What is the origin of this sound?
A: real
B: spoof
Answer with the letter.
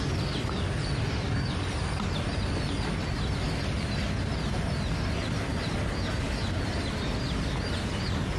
A